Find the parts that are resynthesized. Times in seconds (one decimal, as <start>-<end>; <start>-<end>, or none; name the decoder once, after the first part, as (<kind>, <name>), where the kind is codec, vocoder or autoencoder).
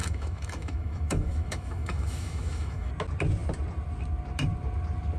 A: 0.0-2.9 (autoencoder, DAC-VAE)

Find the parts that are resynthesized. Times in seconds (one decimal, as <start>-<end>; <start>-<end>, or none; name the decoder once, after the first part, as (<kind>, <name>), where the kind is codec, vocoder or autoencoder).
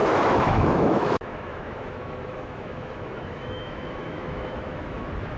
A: 0.0-5.4 (autoencoder, DAC-VAE)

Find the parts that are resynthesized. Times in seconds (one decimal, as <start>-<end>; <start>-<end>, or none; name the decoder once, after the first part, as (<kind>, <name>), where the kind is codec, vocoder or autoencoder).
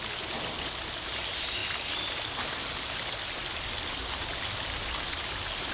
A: none